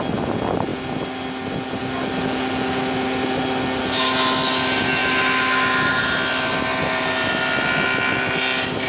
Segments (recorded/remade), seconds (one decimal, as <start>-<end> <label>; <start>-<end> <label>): 0.0-8.9 recorded